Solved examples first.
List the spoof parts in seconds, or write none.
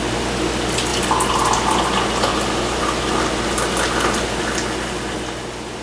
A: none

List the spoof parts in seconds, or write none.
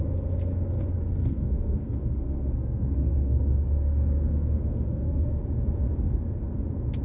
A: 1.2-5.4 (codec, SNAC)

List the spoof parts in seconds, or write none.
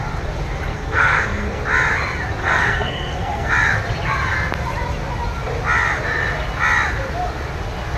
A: 0.7-1.6 (codec, SNAC); 2.4-3.5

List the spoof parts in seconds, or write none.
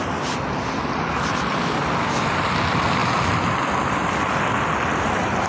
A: none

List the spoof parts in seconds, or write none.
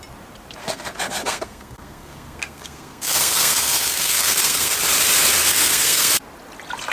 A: 0.6-4.7 (codec, SNAC); 5.5-6.1